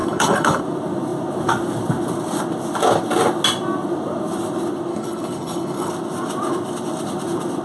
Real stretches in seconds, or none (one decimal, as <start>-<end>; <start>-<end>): 0.6-4.9; 5.9-7.6